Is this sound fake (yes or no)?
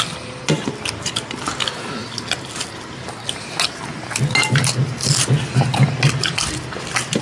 no